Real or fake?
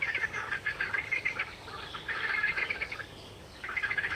fake